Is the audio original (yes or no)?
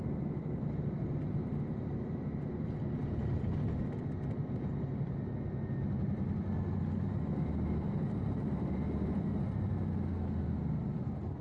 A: yes